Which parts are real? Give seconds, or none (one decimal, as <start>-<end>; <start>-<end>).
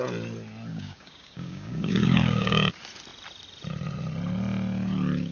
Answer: 0.0-0.7; 2.7-5.3